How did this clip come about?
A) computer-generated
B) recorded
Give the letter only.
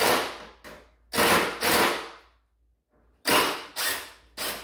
B